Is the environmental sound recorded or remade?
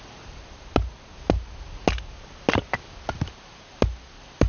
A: recorded